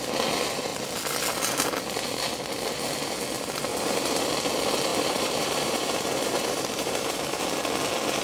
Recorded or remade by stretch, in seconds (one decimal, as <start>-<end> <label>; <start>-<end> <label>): 0.0-3.7 recorded; 3.7-4.3 remade; 4.3-4.9 recorded; 4.9-7.4 remade; 7.4-8.2 recorded